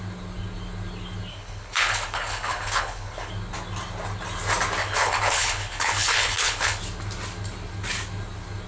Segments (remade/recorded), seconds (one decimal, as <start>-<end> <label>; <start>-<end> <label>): 0.0-1.3 recorded; 1.3-3.3 remade; 3.3-4.8 recorded; 4.8-6.8 remade; 6.8-8.7 recorded